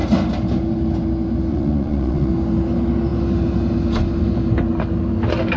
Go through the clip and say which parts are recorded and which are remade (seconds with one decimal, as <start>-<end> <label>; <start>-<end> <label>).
0.0-1.5 recorded; 1.5-2.3 remade; 2.3-5.6 recorded